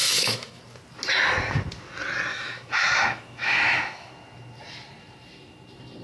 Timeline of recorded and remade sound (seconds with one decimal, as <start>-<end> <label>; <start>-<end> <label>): 0.0-0.6 remade; 0.6-2.3 recorded; 2.3-4.1 remade; 4.1-6.0 recorded